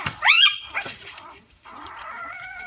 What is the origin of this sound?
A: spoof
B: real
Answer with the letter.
A